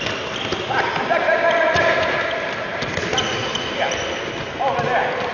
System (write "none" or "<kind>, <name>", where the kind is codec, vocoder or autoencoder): none